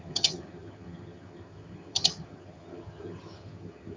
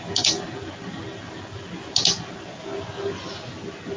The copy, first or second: first